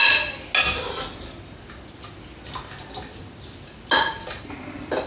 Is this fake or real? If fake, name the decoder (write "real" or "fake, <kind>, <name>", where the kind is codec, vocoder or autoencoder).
real